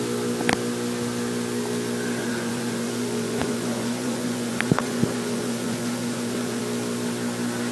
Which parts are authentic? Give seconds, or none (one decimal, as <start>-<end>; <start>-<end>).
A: 0.0-2.2; 6.6-7.7